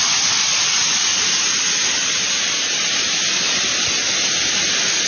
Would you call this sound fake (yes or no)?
no